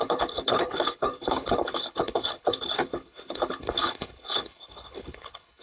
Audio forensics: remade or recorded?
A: remade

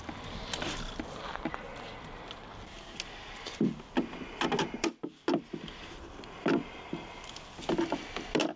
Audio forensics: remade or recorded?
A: recorded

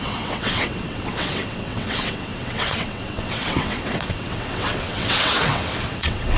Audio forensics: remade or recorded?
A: remade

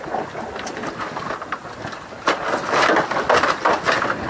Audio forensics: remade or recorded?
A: recorded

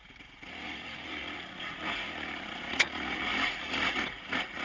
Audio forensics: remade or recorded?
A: remade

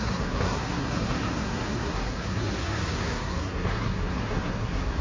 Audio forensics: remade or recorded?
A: remade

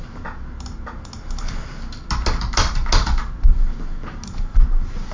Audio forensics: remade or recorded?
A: recorded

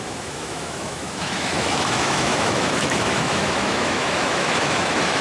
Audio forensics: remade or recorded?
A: remade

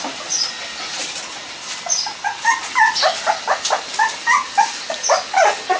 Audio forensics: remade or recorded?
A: recorded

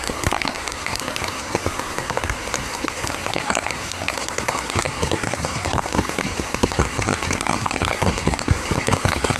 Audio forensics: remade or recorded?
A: remade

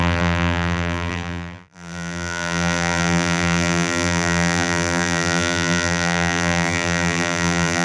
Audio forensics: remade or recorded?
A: remade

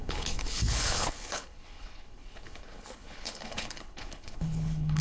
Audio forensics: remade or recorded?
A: remade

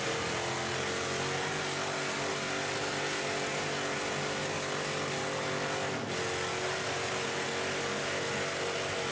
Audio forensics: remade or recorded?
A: recorded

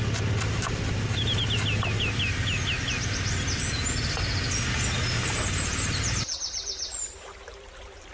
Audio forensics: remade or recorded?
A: recorded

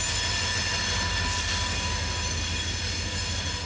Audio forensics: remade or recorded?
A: recorded